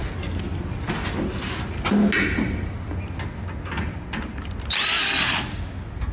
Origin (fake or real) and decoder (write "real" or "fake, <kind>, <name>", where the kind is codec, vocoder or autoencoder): real